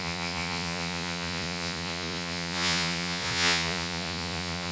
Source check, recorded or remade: remade